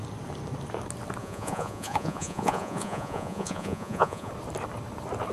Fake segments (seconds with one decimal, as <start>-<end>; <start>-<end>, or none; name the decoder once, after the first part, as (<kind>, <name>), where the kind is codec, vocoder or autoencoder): 1.2-4.3 (vocoder, Vocos)